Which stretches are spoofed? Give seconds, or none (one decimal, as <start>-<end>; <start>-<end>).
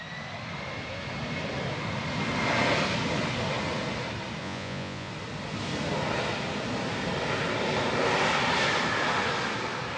4.4-5.1